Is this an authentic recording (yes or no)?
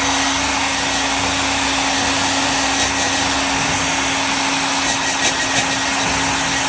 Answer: yes